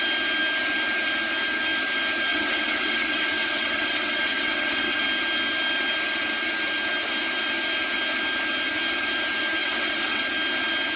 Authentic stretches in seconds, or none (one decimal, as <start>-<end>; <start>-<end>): 0.0-2.3; 5.0-9.6; 10.2-11.0